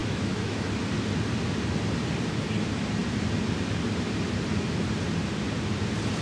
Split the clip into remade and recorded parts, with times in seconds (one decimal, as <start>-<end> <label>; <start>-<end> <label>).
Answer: 0.0-0.7 remade; 0.7-6.2 recorded